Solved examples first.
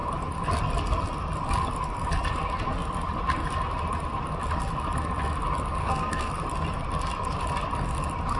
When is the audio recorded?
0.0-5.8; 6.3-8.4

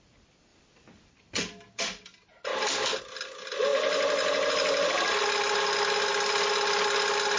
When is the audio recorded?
0.0-0.5; 1.4-7.4

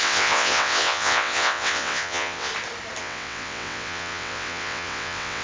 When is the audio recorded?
2.5-3.0

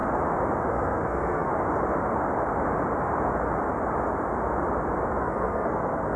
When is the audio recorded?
0.0-0.7; 1.5-5.2

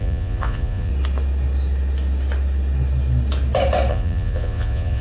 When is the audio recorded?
0.9-3.9

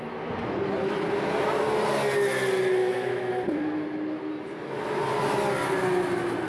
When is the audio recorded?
0.0-2.8; 3.3-6.5